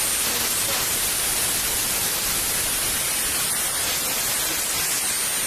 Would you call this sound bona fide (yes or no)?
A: yes